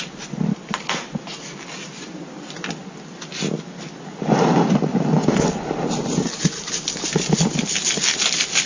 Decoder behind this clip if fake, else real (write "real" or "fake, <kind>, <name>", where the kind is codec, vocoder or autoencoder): real